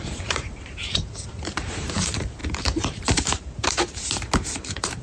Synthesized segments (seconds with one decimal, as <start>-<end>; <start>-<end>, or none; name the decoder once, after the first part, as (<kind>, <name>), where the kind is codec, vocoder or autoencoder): 0.0-5.0 (vocoder, BigVGAN v2)